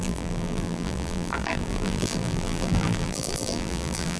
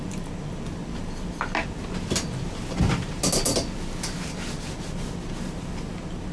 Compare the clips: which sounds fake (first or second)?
first